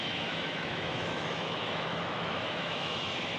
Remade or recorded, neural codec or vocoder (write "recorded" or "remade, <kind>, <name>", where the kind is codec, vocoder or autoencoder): remade, autoencoder, DAC-VAE